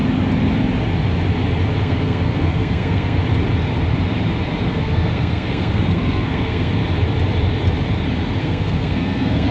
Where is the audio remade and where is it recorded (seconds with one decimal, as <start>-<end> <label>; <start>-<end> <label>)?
0.0-1.8 recorded; 1.8-3.2 remade; 3.2-4.7 recorded; 4.7-6.8 remade; 6.8-8.4 recorded; 8.4-9.5 remade